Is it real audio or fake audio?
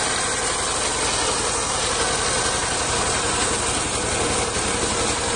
real